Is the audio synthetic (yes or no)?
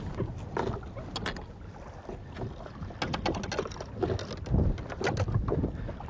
no